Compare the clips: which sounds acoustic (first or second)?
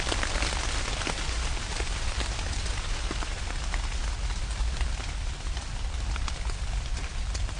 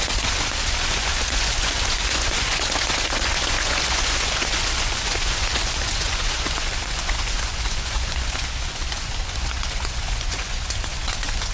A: first